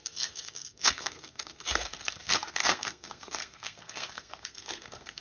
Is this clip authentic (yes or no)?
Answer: no